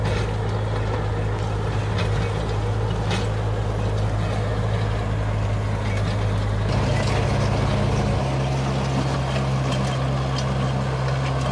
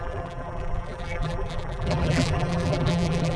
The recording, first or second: first